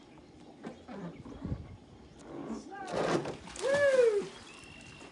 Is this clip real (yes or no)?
yes